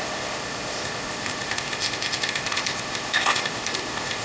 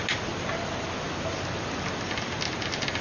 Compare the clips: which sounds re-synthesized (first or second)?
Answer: first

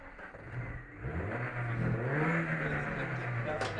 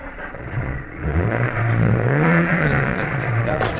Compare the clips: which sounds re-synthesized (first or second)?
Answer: second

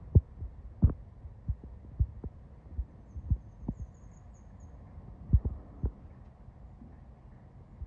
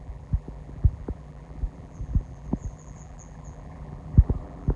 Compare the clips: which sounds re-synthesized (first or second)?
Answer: second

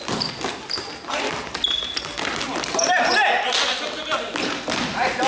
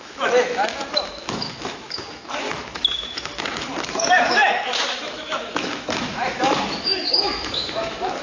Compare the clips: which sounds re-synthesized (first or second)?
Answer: second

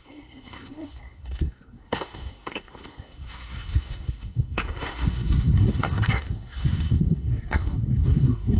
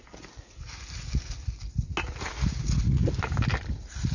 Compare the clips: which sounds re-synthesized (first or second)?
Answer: first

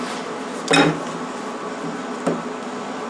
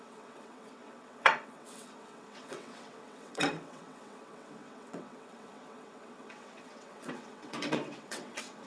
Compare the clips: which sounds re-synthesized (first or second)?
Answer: second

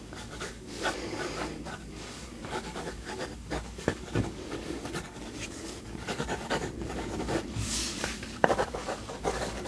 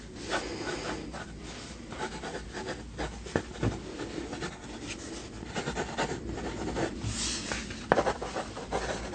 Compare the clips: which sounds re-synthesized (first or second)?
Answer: first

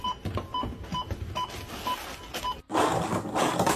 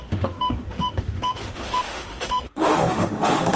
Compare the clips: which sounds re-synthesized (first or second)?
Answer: second